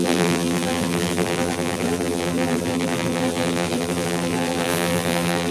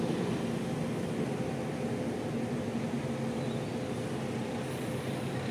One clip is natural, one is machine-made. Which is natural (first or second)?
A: second